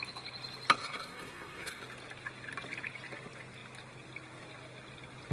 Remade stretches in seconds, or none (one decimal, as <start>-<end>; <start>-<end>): 0.8-1.8